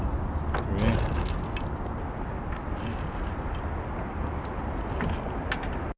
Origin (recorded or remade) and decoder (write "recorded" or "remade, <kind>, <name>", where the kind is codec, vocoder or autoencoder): recorded